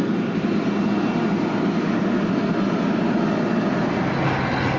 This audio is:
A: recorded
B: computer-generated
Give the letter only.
A